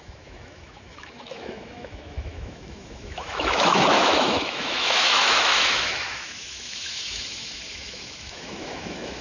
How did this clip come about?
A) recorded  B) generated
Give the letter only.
B